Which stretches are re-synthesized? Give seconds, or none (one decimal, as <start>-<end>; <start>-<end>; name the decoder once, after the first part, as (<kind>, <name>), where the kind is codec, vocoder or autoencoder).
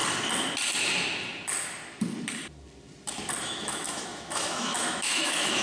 3.4-5.6 (autoencoder, DAC-VAE)